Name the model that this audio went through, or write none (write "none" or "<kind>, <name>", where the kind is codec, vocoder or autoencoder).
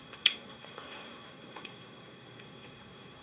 codec, SNAC